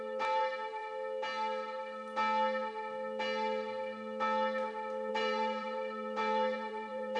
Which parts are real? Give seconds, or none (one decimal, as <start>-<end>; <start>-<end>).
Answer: 0.8-5.1